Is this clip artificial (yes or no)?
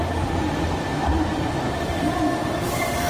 no